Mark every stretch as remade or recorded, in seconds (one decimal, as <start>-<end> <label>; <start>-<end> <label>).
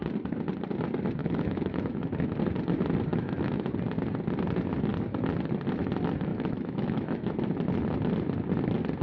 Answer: 0.0-1.2 recorded; 1.2-2.1 remade; 2.1-3.1 recorded; 3.1-3.7 remade; 3.7-6.3 recorded; 6.3-7.3 remade; 7.3-9.0 recorded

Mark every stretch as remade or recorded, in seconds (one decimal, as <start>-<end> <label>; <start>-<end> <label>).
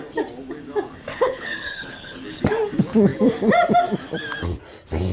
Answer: 0.0-1.1 recorded; 1.1-2.4 remade; 2.4-5.1 recorded